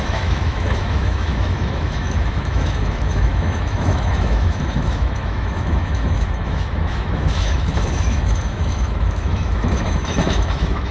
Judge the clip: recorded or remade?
remade